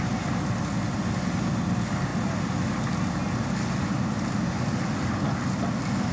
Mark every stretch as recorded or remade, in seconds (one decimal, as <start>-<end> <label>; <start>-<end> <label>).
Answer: 0.0-6.1 recorded